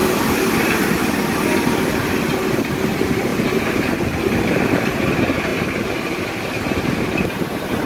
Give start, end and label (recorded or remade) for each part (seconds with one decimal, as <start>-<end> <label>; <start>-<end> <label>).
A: 0.0-2.8 recorded; 2.8-7.9 remade